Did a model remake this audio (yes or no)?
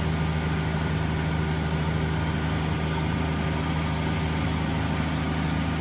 no